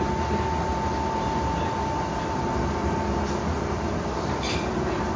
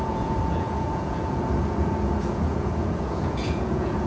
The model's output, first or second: second